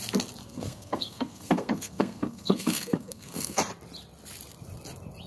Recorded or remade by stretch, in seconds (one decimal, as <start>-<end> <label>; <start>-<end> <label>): 0.0-0.4 recorded; 0.4-3.6 remade; 3.6-5.3 recorded